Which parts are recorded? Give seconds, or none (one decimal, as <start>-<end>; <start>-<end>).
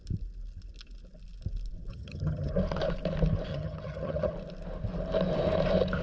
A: 0.0-1.9; 2.5-3.5; 4.3-6.0